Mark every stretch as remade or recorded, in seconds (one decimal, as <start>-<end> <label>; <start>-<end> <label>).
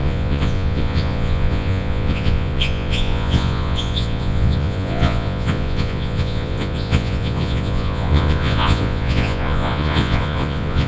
0.0-10.9 remade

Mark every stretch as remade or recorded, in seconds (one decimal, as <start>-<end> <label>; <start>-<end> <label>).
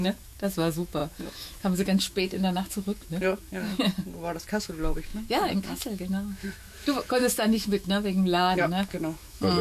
0.0-3.9 remade; 3.9-4.5 recorded; 4.5-9.6 remade